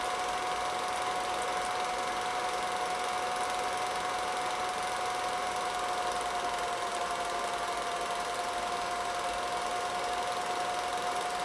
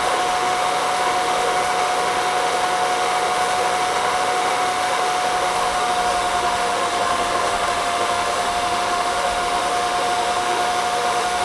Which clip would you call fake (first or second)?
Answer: second